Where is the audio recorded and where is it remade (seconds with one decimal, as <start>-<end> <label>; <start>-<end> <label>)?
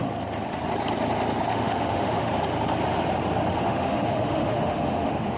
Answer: 0.0-1.5 recorded; 1.5-2.3 remade; 2.3-3.5 recorded; 3.5-5.4 remade